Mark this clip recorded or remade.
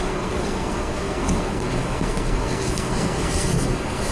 remade